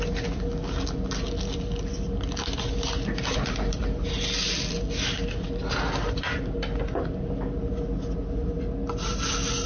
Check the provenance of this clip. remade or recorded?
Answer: recorded